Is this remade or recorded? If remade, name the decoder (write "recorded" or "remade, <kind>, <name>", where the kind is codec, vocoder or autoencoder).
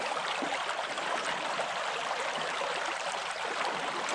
remade, vocoder, BigVGAN v2